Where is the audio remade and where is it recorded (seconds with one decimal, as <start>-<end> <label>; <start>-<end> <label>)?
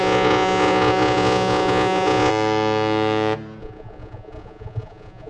0.0-2.3 remade; 2.3-3.6 recorded; 3.6-5.3 remade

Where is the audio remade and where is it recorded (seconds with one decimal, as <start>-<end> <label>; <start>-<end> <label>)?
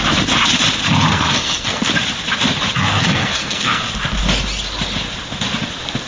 0.0-1.1 recorded; 1.1-1.9 remade; 1.9-2.9 recorded; 2.9-3.8 remade; 3.8-6.1 recorded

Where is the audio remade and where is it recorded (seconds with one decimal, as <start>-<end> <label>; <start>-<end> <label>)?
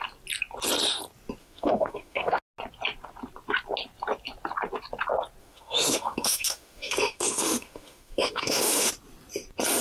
0.0-1.4 recorded; 1.4-2.4 remade; 2.4-5.4 recorded; 5.4-8.9 remade; 8.9-9.8 recorded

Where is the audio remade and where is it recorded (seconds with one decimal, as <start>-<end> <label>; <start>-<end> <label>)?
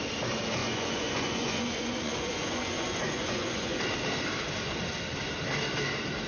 0.0-0.6 recorded; 0.6-3.8 remade; 3.8-6.3 recorded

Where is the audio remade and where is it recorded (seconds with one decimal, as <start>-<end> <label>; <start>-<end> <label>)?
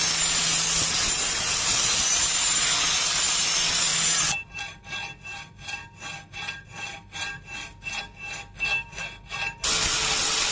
0.0-10.5 recorded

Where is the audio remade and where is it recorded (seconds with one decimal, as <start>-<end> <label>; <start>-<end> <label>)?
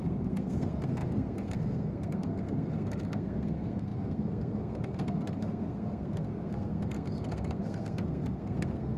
0.0-9.0 remade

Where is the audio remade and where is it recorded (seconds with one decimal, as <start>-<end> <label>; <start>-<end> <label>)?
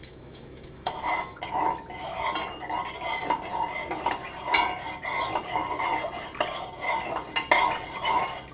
0.0-1.4 remade; 1.4-8.5 recorded